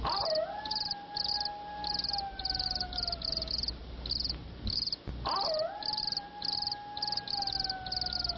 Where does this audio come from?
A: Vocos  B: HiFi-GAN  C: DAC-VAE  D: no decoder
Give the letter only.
D